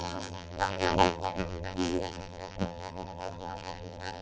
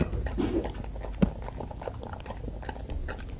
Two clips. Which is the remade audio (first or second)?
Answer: first